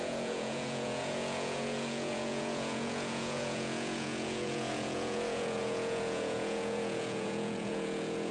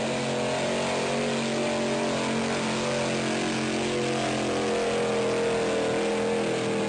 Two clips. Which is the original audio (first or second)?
second